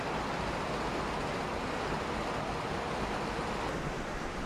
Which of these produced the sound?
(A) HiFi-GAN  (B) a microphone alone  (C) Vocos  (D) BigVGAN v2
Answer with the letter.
D